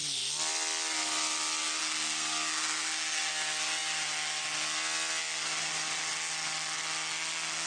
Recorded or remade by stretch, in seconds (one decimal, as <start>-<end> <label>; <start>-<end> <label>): 0.0-1.8 recorded; 1.8-3.3 remade; 3.3-7.7 recorded